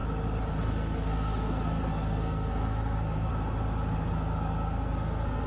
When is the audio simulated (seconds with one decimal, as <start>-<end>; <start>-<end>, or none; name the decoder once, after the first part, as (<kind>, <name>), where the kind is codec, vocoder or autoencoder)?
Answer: 0.6-3.3 (codec, SNAC); 4.1-5.5